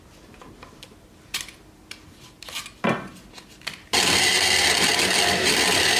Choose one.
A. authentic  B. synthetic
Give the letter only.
A